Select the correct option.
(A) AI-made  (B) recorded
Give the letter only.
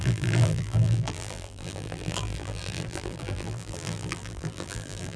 A